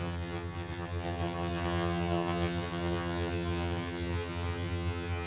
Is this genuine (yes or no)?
no